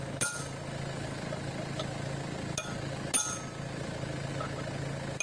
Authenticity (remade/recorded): recorded